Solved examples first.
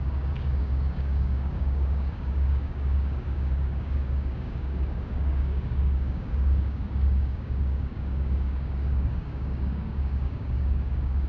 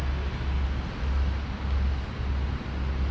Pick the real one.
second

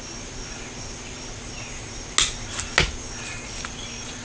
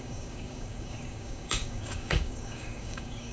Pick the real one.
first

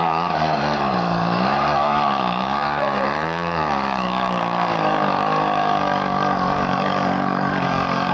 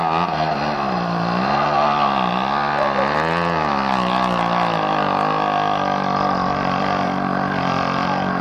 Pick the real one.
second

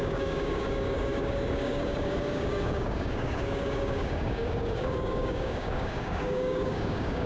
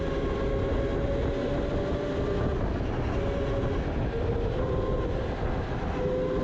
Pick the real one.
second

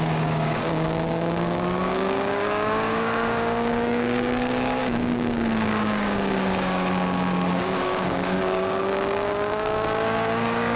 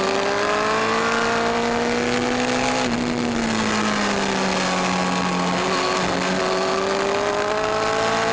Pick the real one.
second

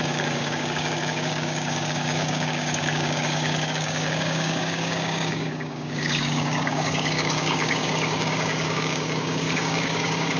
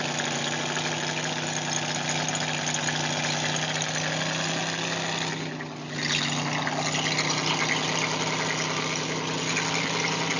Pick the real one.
second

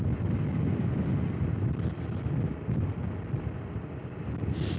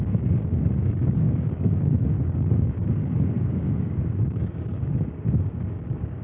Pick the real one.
first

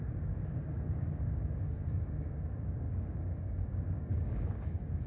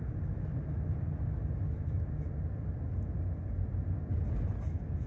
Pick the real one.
second